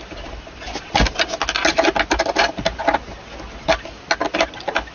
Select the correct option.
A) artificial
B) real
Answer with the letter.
B